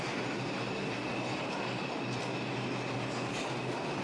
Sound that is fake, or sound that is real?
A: real